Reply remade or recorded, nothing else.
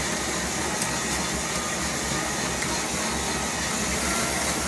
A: recorded